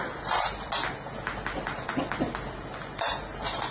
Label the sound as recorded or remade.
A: recorded